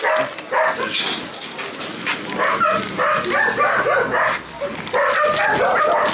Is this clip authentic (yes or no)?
yes